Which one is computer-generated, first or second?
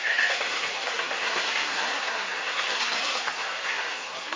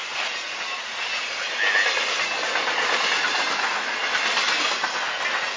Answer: first